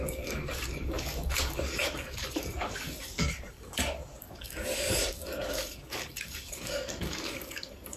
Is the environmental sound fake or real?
fake